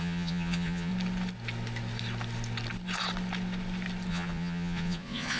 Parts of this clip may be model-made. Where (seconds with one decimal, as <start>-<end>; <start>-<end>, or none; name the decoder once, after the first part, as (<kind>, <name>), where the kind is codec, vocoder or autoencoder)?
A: 0.0-0.9 (vocoder, Vocos); 4.1-5.4